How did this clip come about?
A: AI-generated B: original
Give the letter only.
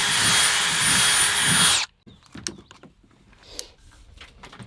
B